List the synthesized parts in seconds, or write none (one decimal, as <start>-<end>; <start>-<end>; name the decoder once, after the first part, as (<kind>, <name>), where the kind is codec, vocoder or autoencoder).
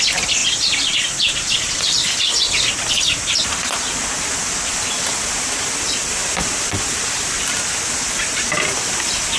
0.4-2.2 (vocoder, BigVGAN v2); 6.2-7.4